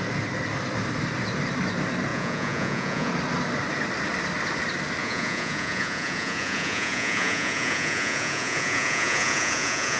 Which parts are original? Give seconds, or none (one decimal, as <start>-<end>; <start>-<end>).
0.0-2.1; 3.1-5.0